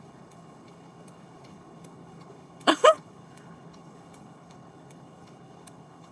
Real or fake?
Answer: fake